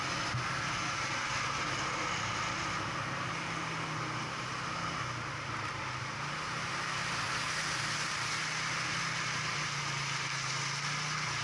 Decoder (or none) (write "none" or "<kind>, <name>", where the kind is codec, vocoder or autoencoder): none